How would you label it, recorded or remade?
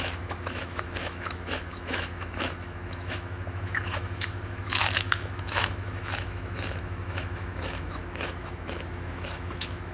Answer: remade